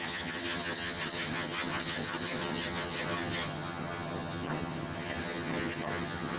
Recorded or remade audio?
remade